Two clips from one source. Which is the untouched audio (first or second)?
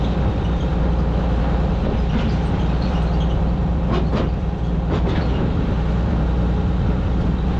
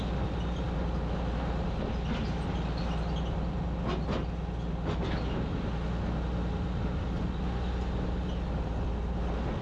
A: second